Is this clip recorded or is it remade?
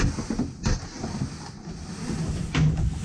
recorded